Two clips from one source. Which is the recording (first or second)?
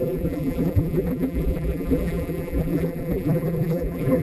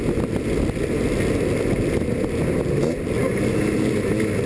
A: second